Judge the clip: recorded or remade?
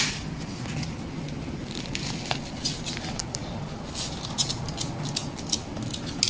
recorded